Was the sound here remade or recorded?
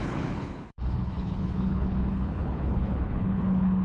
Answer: remade